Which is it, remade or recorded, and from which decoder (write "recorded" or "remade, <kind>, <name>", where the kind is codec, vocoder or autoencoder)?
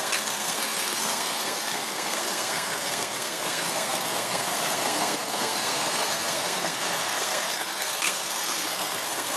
remade, codec, SNAC